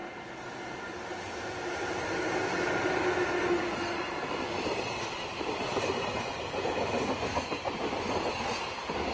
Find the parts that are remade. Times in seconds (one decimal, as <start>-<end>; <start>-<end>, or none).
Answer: none